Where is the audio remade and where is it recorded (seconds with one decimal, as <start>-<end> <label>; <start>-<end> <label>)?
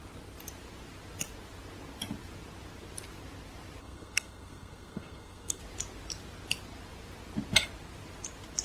0.0-3.8 recorded; 3.8-5.6 remade; 5.6-8.6 recorded